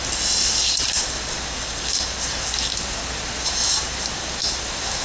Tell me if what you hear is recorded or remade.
recorded